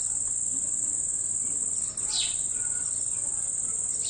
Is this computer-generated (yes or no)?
no